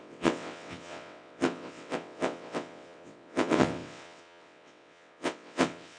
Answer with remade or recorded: remade